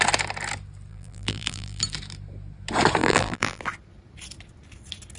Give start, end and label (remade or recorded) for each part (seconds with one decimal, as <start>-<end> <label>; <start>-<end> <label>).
0.0-0.9 recorded; 0.9-1.8 remade; 1.8-3.0 recorded; 3.0-3.6 remade; 3.6-5.2 recorded

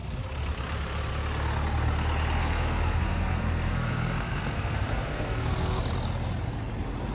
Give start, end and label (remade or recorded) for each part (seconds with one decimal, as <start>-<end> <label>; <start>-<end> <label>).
0.0-2.4 recorded; 2.4-5.8 remade; 5.8-7.1 recorded

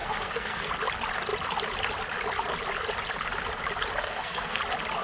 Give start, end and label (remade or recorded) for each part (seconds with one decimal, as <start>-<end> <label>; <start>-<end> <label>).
0.0-0.7 remade; 0.7-4.0 recorded; 4.0-4.6 remade; 4.6-5.0 recorded

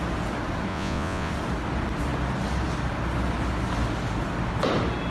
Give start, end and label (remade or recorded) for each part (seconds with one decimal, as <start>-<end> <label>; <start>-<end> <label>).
0.0-0.7 recorded; 0.7-1.3 remade; 1.3-5.1 recorded